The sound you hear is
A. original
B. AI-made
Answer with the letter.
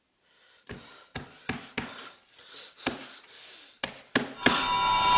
A